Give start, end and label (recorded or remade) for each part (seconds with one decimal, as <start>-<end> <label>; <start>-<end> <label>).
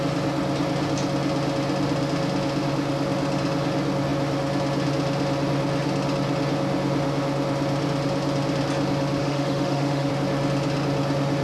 0.0-9.2 recorded; 9.2-10.1 remade; 10.1-11.4 recorded